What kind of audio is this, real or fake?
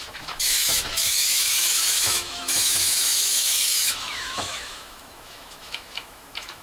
fake